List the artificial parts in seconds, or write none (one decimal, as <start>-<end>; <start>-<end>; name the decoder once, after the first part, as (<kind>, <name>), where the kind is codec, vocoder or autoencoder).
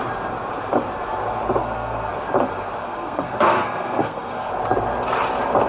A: 1.6-2.1 (codec, SNAC); 2.8-4.5